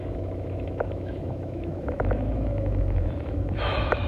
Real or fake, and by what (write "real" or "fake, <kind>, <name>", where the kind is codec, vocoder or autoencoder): fake, autoencoder, DAC-VAE